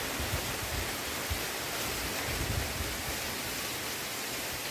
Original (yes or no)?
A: yes